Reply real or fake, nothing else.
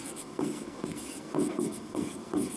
fake